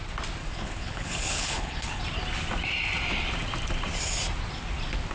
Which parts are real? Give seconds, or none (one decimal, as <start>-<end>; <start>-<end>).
0.0-0.4; 2.0-5.1